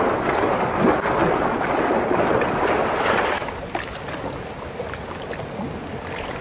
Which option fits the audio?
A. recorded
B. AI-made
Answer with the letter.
A